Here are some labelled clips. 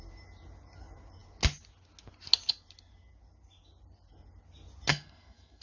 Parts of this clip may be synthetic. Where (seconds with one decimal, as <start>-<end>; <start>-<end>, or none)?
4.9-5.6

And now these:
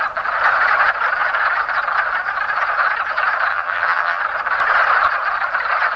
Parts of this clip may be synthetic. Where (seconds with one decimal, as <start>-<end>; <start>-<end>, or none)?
3.5-4.2

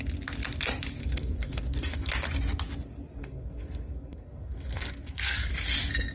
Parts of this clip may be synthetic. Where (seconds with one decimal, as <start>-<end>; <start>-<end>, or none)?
1.0-2.1; 3.2-5.5